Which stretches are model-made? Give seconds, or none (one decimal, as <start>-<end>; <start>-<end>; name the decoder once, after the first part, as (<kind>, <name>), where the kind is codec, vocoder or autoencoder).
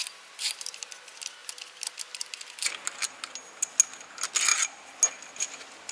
4.5-5.0 (vocoder, BigVGAN v2)